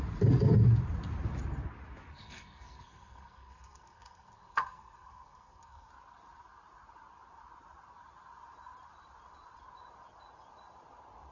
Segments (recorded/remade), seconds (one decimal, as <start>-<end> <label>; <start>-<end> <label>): 0.0-2.1 recorded; 2.1-5.9 remade; 5.9-11.3 recorded